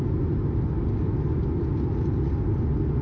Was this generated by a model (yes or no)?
no